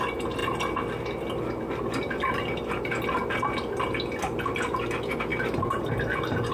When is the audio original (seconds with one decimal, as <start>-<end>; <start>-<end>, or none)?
0.0-6.5